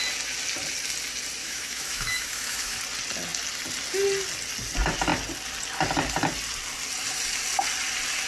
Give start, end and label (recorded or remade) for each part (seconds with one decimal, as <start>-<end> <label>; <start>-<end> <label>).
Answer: 0.0-1.4 recorded; 1.4-2.8 remade; 2.8-8.3 recorded